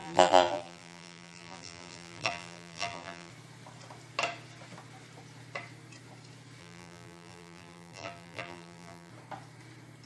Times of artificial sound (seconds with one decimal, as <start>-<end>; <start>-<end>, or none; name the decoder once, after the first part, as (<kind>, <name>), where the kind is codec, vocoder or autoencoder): 0.0-3.3 (vocoder, BigVGAN v2); 6.6-9.1